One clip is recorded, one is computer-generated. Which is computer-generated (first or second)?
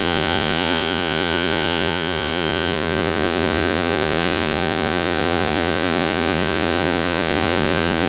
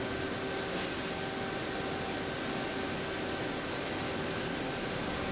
first